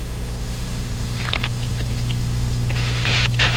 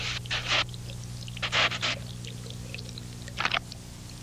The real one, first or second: second